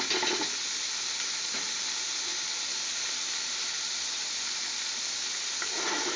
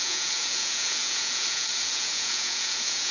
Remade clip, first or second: second